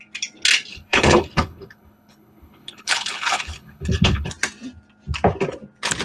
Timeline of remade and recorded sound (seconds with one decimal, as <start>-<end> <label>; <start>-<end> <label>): 0.0-0.7 recorded; 0.7-4.3 remade; 4.3-6.0 recorded